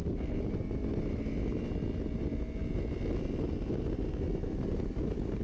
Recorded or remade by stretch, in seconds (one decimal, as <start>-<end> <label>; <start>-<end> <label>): 0.0-5.4 recorded